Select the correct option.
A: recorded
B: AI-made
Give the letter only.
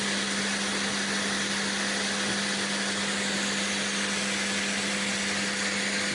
A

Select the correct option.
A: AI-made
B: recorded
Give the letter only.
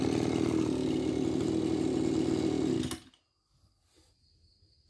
B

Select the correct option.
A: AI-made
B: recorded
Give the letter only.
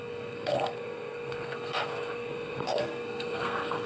A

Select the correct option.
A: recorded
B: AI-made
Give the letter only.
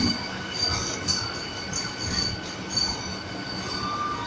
A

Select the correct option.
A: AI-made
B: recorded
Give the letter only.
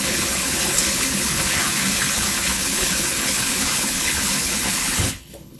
A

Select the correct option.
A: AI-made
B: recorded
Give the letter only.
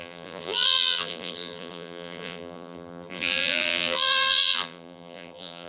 A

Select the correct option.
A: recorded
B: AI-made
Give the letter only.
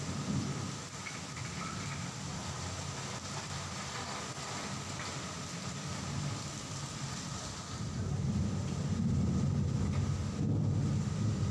A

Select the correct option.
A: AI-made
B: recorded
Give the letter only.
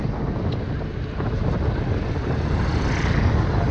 B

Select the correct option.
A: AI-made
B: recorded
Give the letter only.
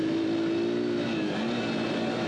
B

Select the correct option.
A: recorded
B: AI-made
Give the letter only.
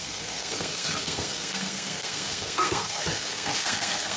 B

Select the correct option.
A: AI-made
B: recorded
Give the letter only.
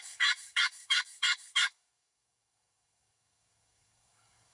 A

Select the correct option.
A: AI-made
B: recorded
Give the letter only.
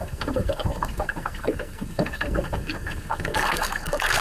A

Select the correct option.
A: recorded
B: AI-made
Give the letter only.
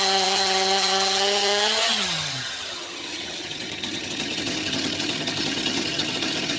B